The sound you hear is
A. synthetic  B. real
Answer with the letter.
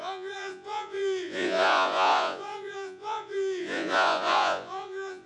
A